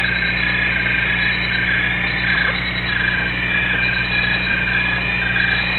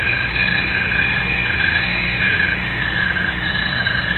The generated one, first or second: second